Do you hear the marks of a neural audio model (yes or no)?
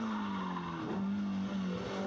no